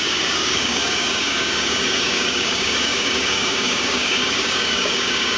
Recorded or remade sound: remade